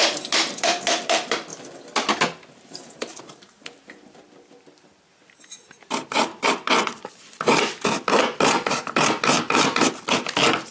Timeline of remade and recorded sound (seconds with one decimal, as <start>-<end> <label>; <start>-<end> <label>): 0.0-6.3 remade; 6.3-10.7 recorded